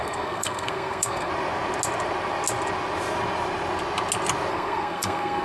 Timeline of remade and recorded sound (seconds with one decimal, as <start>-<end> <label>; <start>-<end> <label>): 0.0-1.3 remade; 1.3-4.5 recorded; 4.5-5.4 remade